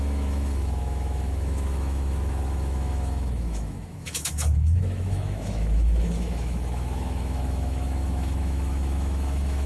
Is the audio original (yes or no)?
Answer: no